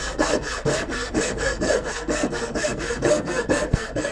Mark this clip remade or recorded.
remade